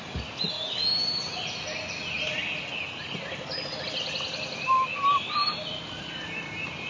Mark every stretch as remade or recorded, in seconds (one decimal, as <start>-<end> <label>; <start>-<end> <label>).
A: 0.0-6.9 recorded